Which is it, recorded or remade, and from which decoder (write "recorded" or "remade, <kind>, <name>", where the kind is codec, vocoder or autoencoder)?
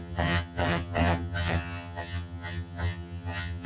remade, vocoder, HiFi-GAN